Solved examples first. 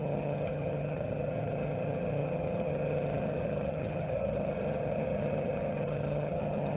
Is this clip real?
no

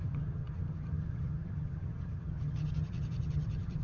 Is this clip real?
no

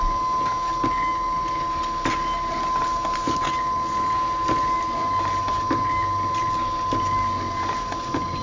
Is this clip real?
yes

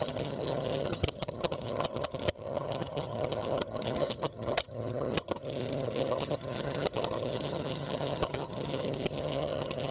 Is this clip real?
no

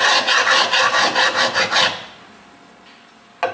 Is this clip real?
yes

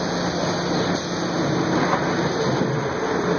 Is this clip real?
yes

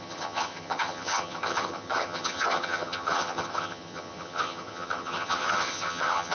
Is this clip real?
no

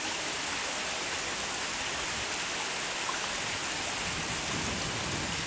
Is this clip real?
yes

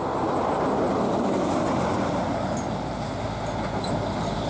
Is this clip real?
yes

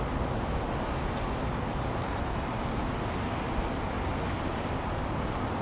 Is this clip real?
yes